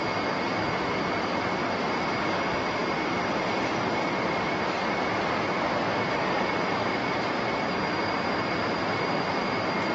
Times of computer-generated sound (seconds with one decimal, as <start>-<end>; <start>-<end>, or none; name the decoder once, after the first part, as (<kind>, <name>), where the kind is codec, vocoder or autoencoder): 0.0-9.9 (vocoder, BigVGAN v2)